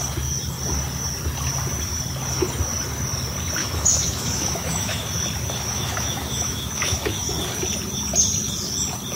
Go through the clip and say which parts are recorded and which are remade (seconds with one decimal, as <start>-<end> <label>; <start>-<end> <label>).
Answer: 0.0-3.6 recorded; 3.6-5.1 remade; 5.1-5.7 recorded; 5.7-7.3 remade; 7.3-9.2 recorded